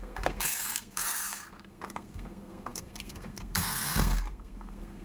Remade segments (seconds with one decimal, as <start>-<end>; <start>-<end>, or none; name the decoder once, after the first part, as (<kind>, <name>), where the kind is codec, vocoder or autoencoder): 0.0-5.0 (codec, SNAC)